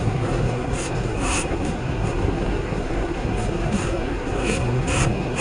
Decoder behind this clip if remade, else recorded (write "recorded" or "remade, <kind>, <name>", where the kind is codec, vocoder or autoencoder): remade, codec, SNAC